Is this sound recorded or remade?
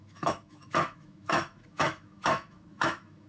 remade